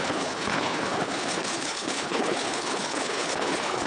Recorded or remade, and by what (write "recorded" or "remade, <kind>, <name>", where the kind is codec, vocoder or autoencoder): remade, codec, HILCodec